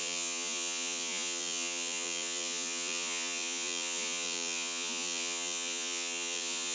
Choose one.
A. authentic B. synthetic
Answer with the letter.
B